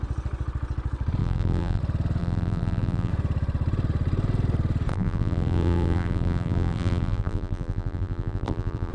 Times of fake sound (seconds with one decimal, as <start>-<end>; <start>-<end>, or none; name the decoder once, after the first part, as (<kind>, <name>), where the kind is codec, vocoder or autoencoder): 1.2-1.8 (vocoder, BigVGAN v2); 2.2-3.1; 4.9-8.9